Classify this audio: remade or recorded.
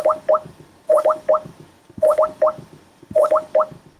remade